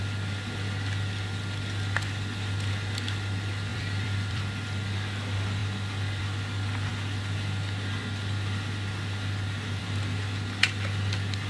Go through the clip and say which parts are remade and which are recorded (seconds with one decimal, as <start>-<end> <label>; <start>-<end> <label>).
0.0-3.7 recorded; 3.7-4.4 remade; 4.4-11.5 recorded